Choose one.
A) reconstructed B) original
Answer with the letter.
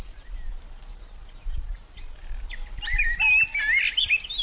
B